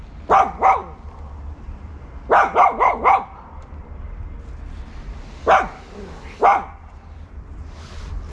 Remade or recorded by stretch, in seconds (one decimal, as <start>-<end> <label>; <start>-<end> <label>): 0.0-8.3 recorded